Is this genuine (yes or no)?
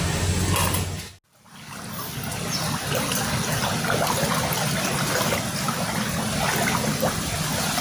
yes